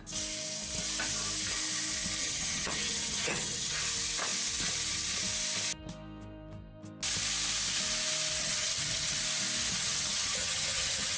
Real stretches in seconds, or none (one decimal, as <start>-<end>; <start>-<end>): 0.0-2.2; 3.8-8.4; 9.2-9.8